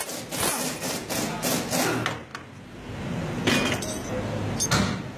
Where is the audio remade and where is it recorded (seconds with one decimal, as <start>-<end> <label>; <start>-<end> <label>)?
0.0-5.2 recorded